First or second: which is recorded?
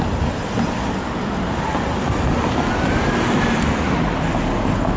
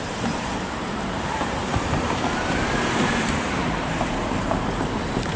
first